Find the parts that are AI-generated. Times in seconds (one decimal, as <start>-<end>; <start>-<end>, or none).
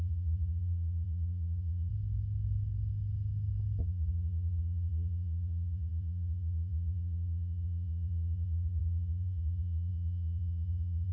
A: 0.0-1.9; 3.8-11.1